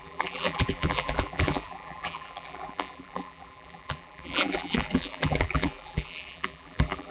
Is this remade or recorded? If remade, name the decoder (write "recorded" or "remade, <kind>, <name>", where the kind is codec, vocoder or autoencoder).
remade, vocoder, BigVGAN v2